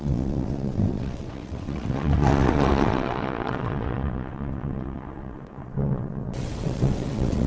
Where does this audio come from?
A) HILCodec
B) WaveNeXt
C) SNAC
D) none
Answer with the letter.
B